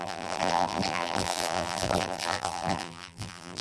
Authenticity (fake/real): fake